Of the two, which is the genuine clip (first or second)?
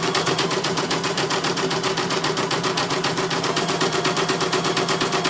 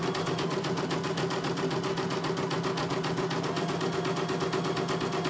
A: second